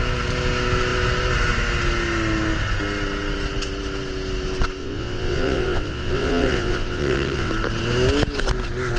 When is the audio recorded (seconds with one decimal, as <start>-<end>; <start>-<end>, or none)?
0.0-4.8; 7.5-9.0